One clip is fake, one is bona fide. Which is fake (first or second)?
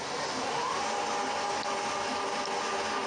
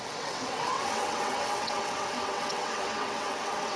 second